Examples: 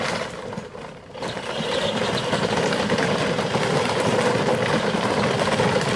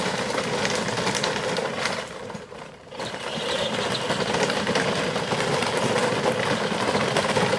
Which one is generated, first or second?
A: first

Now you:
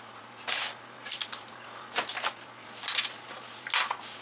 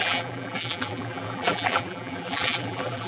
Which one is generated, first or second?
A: second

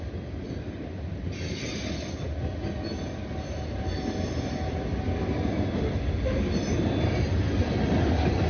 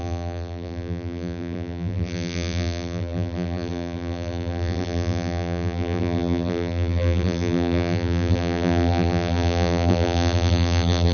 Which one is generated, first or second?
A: second